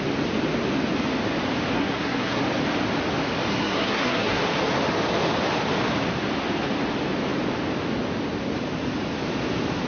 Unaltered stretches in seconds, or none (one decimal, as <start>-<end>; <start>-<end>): 0.0-1.7; 2.4-3.5; 4.4-9.9